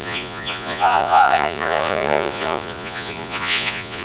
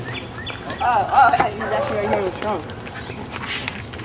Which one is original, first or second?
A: second